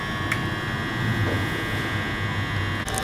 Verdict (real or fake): real